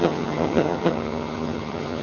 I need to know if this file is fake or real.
fake